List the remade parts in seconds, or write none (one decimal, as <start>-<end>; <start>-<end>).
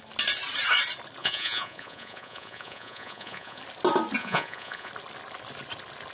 1.2-3.6; 4.2-4.9